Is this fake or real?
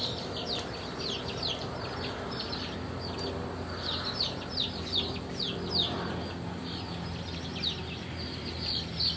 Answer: fake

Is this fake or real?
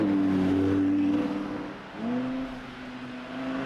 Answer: real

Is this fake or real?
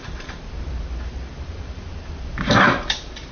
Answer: fake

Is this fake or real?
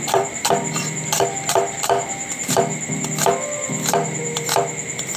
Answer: fake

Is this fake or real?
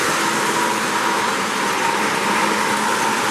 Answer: real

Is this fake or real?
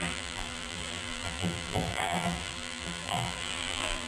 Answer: fake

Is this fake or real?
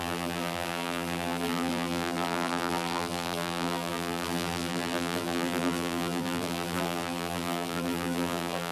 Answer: fake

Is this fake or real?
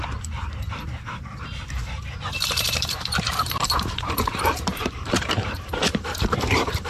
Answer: fake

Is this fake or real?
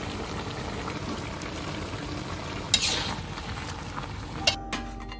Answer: real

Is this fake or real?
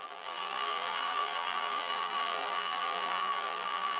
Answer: fake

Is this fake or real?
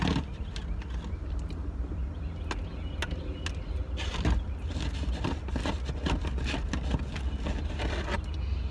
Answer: real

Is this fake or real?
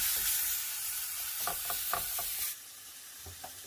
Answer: fake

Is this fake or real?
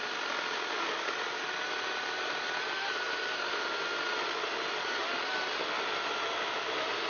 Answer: real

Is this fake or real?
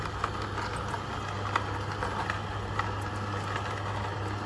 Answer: real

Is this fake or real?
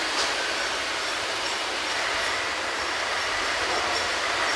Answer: fake